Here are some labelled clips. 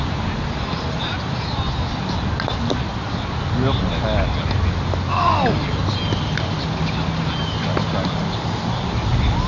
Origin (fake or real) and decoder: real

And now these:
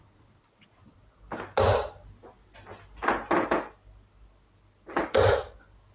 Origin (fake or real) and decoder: real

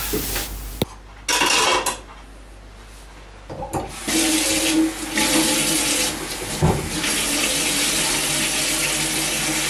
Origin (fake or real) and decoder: real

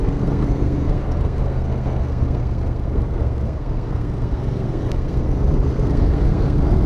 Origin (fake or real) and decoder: fake, codec, SNAC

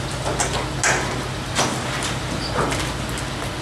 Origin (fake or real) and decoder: real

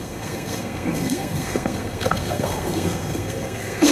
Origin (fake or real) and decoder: fake, codec, SNAC